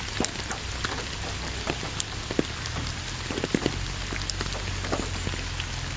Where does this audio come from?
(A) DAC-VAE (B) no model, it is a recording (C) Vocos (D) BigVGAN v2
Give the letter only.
B